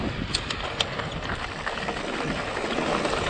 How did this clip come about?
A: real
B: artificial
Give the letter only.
A